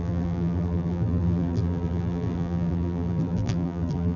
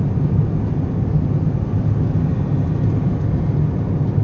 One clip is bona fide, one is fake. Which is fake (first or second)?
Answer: first